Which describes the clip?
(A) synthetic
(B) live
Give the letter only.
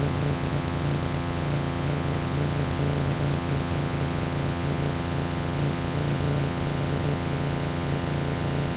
A